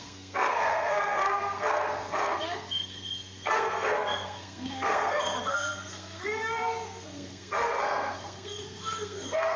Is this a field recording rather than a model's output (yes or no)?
no